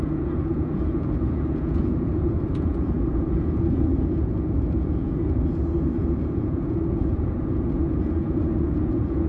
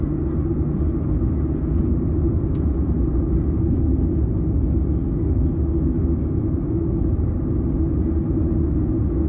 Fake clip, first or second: first